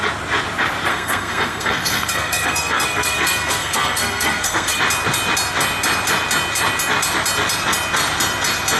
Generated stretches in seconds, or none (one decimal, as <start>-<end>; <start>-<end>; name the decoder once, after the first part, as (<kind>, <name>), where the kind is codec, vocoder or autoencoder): 0.9-4.8 (codec, SNAC)